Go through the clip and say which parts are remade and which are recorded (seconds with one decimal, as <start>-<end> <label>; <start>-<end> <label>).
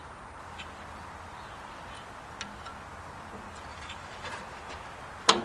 0.0-3.7 recorded; 3.7-4.3 remade; 4.3-5.4 recorded